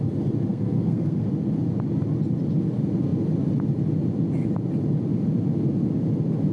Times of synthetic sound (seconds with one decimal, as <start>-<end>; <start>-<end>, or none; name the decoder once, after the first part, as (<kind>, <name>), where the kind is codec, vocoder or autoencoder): 0.5-1.3 (codec, SNAC)